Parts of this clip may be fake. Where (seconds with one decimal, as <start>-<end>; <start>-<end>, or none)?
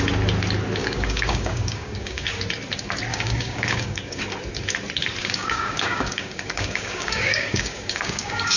0.8-2.3; 3.1-4.2; 5.2-8.6